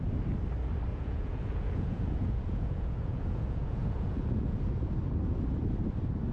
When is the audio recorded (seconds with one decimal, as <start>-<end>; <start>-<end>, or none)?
0.0-0.9; 4.7-6.3